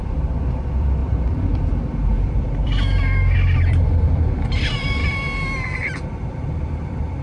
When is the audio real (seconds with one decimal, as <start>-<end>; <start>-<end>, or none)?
5.0-6.3